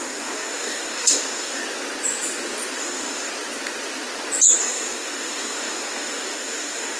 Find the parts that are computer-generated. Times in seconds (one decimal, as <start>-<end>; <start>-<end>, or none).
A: 0.0-1.6; 2.8-3.3; 4.6-7.0